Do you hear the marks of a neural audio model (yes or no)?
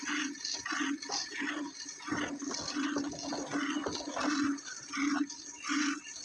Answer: no